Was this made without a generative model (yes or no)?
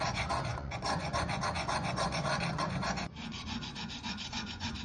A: no